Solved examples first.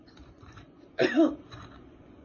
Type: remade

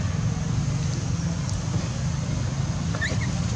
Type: recorded